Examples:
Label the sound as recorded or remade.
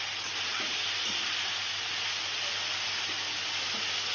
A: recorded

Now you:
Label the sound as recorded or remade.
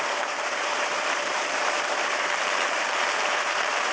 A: remade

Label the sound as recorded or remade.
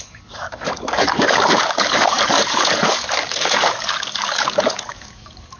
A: remade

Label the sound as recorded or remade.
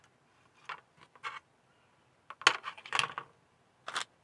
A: recorded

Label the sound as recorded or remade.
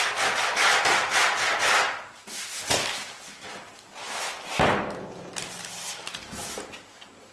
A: recorded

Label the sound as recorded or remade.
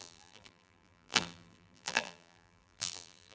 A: remade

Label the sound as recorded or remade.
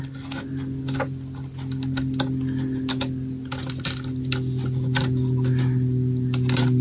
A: recorded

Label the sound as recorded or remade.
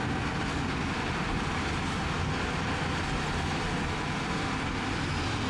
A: recorded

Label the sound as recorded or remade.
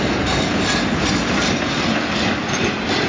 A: recorded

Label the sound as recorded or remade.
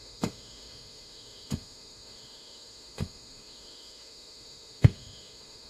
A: remade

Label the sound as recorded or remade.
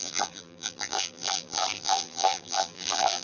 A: remade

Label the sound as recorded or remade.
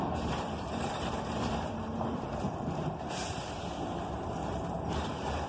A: remade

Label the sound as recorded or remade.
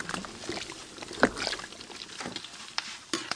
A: recorded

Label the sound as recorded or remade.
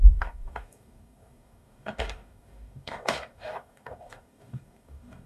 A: remade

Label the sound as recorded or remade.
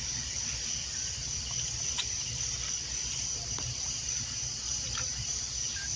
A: remade